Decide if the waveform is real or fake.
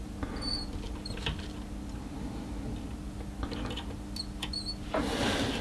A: real